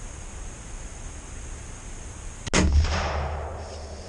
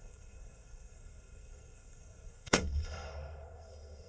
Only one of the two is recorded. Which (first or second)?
first